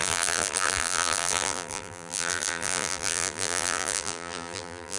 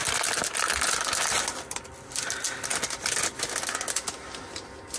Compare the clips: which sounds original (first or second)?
second